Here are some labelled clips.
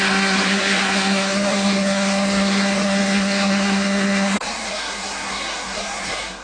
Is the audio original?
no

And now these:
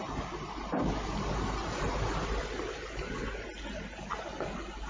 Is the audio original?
yes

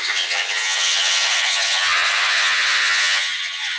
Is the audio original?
no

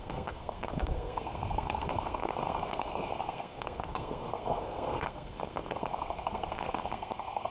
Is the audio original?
no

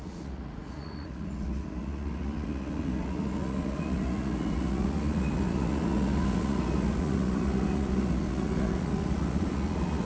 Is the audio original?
no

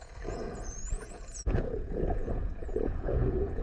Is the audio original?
no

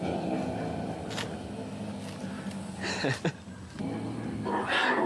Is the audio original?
yes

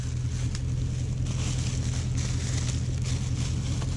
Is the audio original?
yes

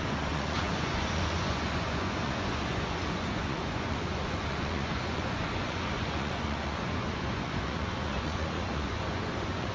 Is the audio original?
no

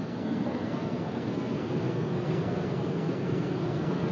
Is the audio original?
no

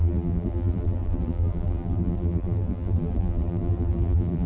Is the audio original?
no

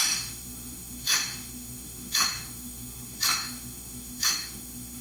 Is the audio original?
no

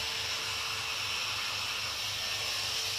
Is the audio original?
yes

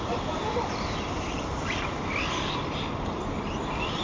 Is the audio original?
yes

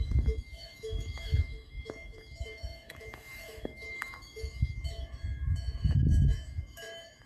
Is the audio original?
no